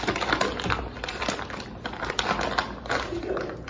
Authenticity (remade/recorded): recorded